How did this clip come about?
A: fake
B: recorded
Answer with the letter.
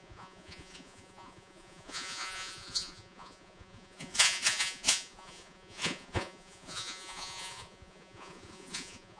A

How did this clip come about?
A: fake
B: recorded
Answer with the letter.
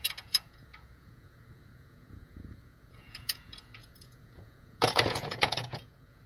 A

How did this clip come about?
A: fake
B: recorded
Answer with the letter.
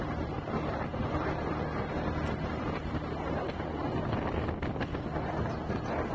B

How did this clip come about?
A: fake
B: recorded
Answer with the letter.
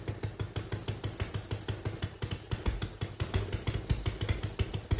B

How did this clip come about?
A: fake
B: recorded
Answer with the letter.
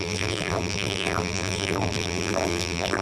A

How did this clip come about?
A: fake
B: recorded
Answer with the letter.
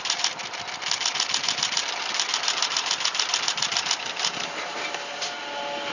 A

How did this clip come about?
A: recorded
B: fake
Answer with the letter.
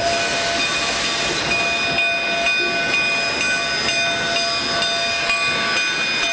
A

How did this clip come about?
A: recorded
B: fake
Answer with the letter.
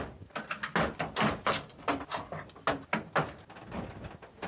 A